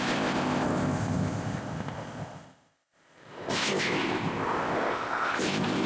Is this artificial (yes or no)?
yes